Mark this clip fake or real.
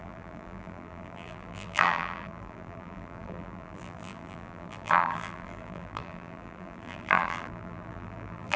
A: fake